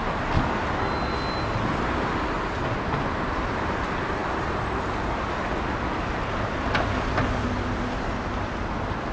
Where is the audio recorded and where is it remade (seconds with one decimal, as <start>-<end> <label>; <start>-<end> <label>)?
0.0-9.1 recorded